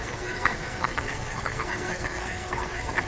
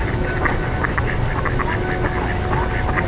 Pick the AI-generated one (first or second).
first